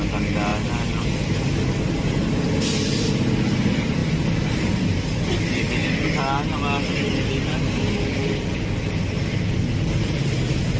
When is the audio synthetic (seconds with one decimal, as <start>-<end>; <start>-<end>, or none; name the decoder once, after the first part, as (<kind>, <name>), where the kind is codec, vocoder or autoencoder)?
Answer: 0.0-5.8 (vocoder, BigVGAN v2); 10.0-10.8